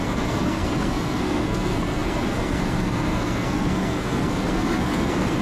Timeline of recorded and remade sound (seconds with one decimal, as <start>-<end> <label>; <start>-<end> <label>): 0.0-5.4 remade